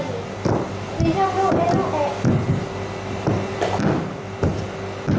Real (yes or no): yes